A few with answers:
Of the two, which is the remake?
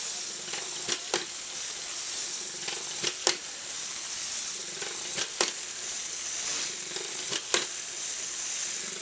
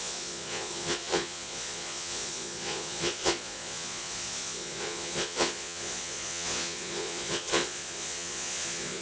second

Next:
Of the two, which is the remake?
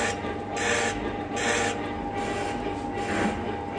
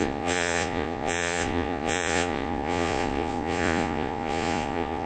second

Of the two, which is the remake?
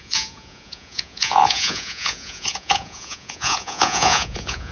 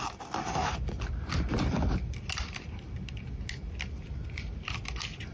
first